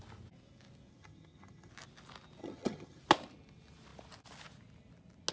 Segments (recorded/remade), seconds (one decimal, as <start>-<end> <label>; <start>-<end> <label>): 0.0-0.9 recorded; 0.9-1.7 remade; 1.7-2.4 recorded; 2.4-3.0 remade; 3.0-5.3 recorded